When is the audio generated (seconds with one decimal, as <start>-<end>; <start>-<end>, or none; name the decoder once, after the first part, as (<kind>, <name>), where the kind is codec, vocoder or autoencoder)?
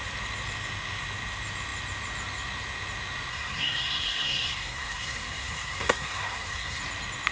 3.3-6.8 (codec, SNAC)